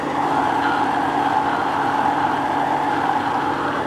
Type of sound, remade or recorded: recorded